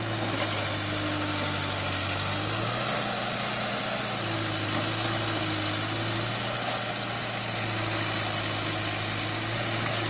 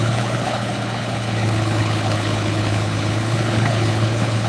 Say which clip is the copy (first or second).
second